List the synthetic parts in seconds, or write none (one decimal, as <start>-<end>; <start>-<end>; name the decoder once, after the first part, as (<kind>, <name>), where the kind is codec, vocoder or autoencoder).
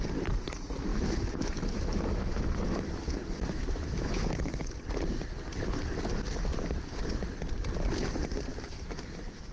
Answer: 0.9-4.7 (autoencoder, DAC-VAE); 8.5-9.5